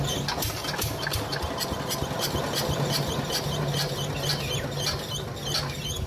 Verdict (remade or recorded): recorded